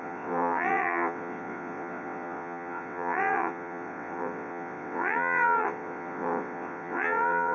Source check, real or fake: fake